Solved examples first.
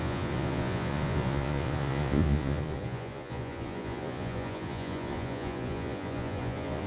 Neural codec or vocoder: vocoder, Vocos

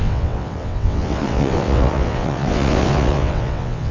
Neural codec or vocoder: vocoder, WaveNeXt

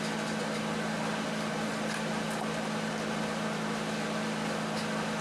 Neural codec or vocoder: none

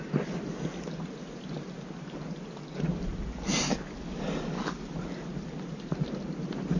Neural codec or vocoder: none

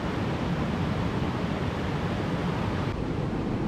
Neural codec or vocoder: none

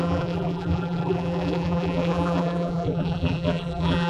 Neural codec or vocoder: vocoder, BigVGAN v2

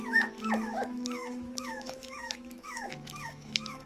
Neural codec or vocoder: autoencoder, DAC-VAE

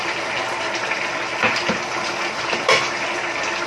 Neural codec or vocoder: none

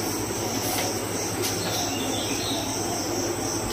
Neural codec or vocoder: none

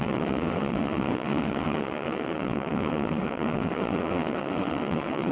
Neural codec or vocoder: vocoder, WaveNeXt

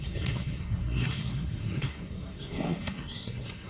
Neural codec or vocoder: codec, SNAC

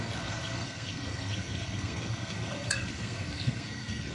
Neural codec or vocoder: codec, SNAC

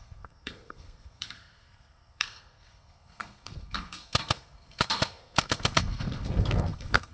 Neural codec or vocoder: codec, SNAC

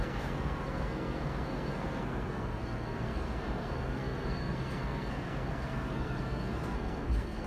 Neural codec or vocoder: codec, SNAC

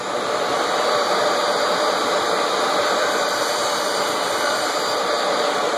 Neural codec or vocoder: vocoder, BigVGAN v2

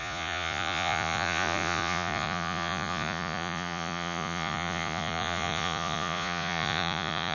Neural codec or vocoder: vocoder, Vocos